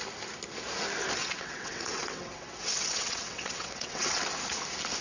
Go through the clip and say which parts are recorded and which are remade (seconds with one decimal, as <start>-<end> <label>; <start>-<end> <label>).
0.0-1.2 recorded; 1.2-4.2 remade; 4.2-5.0 recorded